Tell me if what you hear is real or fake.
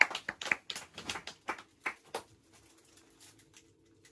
real